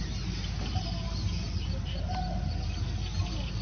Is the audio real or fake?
real